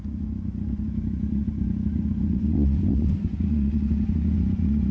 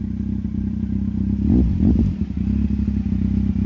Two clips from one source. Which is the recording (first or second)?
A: second